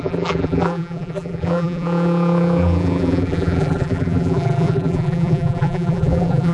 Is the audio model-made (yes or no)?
yes